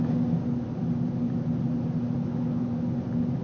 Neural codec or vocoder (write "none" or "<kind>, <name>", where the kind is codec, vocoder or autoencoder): none